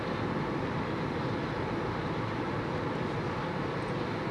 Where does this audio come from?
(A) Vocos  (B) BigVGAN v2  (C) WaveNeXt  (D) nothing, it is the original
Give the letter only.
D